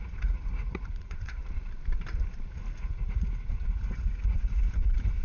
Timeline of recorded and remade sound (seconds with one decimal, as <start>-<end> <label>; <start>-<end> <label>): 0.0-1.4 remade; 1.4-2.8 recorded; 2.8-5.2 remade